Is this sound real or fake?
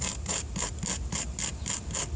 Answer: real